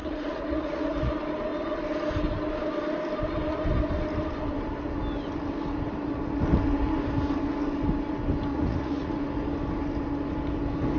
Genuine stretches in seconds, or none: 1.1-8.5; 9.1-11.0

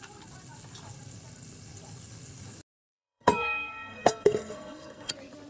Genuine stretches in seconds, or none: 0.0-2.8; 5.1-5.5

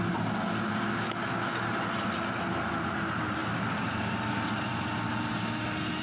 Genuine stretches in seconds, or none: 0.0-6.0

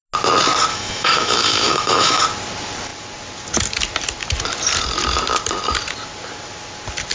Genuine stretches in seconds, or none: 0.0-0.7; 2.2-7.1